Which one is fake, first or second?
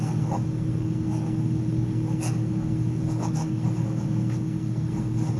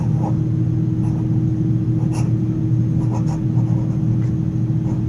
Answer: first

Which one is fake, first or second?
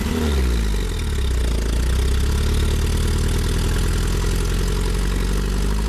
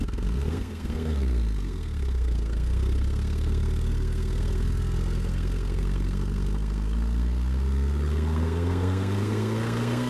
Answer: second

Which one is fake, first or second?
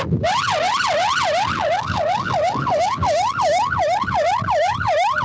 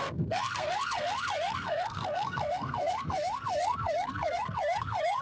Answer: second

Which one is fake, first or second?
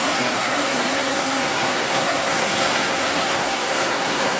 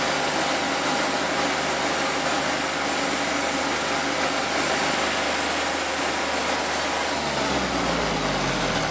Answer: first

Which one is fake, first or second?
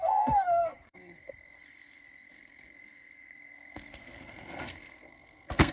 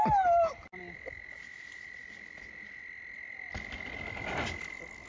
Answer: first